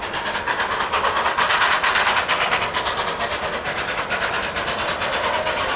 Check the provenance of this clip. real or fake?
real